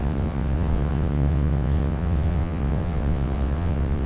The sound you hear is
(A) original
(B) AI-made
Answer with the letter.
B